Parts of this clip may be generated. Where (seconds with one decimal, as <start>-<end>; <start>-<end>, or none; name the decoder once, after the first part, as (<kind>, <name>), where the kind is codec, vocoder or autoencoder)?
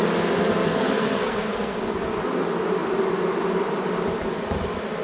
0.6-1.8 (codec, SNAC)